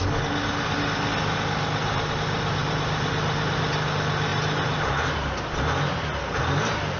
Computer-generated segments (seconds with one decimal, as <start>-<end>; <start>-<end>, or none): none